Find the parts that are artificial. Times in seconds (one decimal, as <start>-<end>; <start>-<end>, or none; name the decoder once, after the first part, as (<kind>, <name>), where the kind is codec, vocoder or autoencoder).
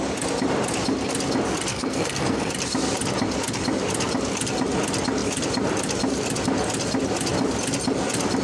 1.7-2.5 (codec, SNAC)